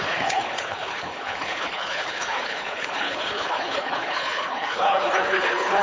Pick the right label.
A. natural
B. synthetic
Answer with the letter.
B